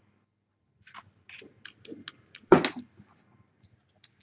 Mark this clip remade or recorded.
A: recorded